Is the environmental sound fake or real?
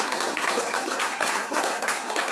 fake